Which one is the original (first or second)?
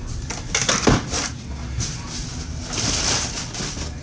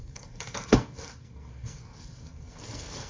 first